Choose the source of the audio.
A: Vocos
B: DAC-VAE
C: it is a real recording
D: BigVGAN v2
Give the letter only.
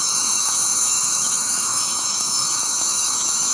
B